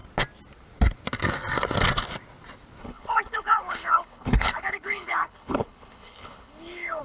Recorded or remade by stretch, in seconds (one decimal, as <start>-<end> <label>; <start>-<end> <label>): 0.0-2.8 recorded; 2.8-7.0 remade